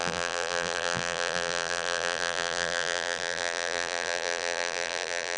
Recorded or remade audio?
remade